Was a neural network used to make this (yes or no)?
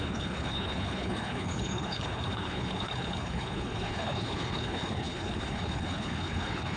yes